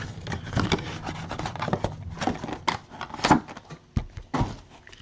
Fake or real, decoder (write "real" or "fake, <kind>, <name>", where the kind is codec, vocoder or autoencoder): real